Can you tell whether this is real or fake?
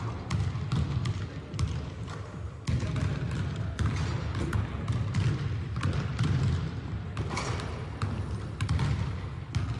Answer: real